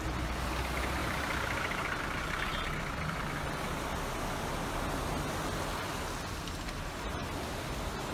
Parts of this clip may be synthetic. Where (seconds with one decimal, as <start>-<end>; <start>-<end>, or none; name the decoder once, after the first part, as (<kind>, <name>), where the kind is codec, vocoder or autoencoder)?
1.0-2.0 (vocoder, BigVGAN v2)